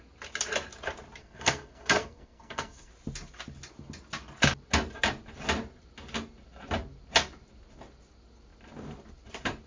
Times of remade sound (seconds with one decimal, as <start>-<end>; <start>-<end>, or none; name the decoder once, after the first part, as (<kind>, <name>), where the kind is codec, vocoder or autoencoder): 1.2-2.9 (codec, SNAC)